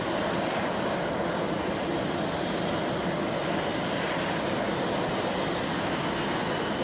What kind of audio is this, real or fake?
real